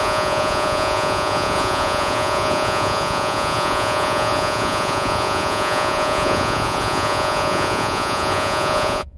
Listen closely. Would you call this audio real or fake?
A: fake